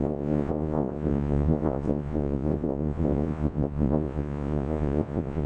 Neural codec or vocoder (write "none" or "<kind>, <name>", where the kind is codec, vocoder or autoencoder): vocoder, Vocos